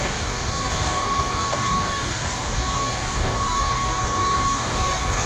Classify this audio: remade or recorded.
remade